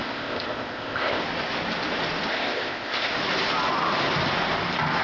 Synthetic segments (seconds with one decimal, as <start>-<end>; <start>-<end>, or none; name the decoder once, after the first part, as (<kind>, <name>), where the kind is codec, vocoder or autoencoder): 0.0-1.2 (codec, ZipCodec); 2.3-3.1